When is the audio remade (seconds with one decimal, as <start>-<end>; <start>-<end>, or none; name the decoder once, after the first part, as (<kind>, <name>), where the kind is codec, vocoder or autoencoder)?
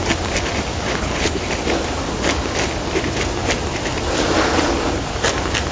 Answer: 0.9-1.4 (codec, HILCodec)